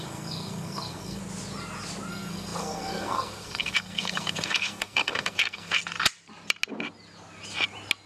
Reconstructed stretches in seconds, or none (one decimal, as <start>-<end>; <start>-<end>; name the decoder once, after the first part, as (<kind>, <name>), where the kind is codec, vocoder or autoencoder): 0.0-1.2 (codec, SNAC); 2.1-5.8